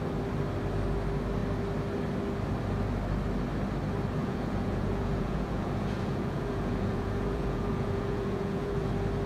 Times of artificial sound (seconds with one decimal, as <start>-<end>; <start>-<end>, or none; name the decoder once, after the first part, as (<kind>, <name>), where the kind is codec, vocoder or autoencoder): 4.2-8.9 (vocoder, Vocos)